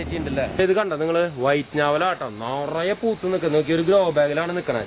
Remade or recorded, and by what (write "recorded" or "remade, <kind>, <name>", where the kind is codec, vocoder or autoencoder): recorded